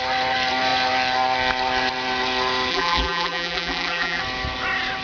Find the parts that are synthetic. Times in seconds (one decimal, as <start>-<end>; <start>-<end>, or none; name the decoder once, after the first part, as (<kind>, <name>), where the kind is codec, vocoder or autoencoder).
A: 2.7-4.2 (vocoder, BigVGAN v2)